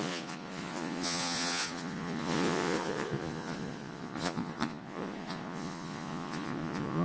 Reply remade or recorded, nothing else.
remade